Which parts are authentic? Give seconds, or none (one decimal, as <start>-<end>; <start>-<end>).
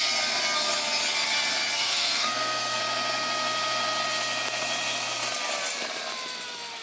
0.0-1.8; 2.8-6.8